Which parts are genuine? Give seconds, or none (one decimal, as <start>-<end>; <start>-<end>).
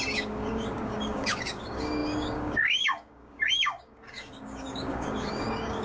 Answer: none